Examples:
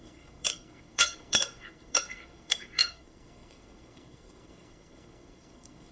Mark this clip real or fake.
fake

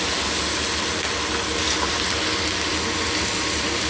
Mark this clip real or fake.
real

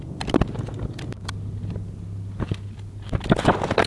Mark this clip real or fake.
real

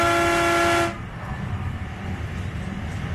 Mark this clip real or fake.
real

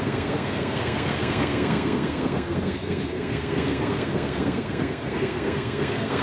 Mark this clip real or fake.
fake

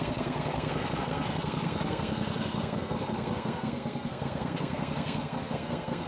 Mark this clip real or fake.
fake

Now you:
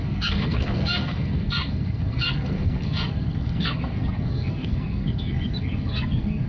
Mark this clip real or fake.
fake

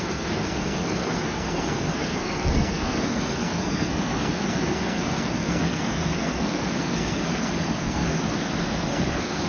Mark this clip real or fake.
fake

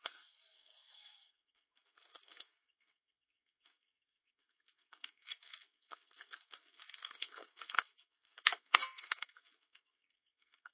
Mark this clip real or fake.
fake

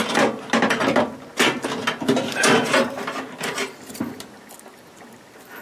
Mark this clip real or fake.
real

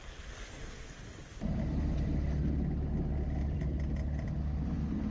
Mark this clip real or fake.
real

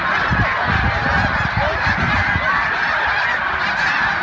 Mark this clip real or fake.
real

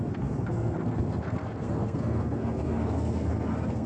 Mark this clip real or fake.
fake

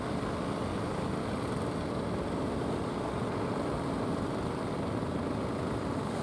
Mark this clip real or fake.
real